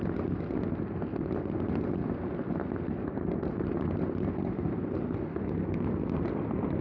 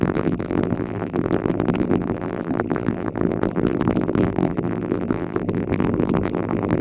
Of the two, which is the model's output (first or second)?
second